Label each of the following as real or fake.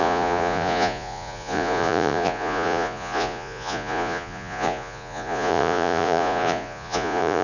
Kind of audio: fake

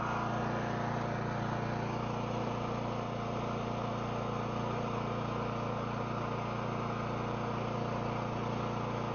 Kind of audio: real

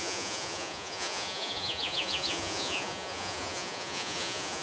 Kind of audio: fake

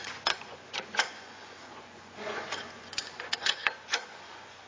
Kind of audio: fake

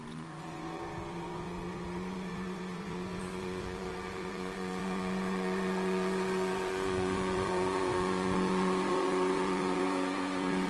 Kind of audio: fake